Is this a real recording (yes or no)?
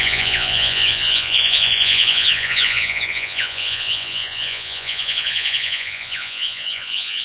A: no